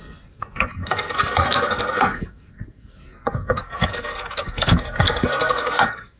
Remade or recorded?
remade